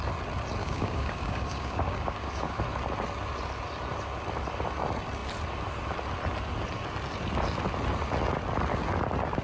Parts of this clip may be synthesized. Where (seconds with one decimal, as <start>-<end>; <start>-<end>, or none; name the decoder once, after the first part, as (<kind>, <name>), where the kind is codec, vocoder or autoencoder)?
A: 0.6-2.6 (codec, DAC)